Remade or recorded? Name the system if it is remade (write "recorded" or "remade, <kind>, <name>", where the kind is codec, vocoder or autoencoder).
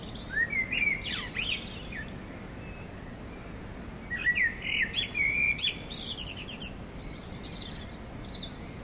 recorded